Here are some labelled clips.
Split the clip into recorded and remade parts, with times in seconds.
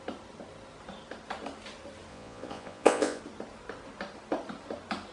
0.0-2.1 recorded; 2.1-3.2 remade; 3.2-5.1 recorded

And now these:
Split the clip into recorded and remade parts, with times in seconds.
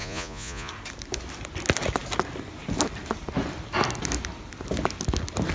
0.0-0.7 remade; 0.7-5.5 recorded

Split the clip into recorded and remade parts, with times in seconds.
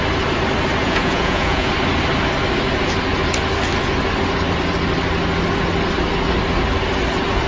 0.0-0.8 recorded; 0.8-1.7 remade; 1.7-7.5 recorded